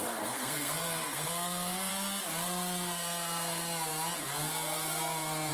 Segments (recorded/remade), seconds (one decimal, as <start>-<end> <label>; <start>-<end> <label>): 0.0-1.9 remade; 1.9-5.5 recorded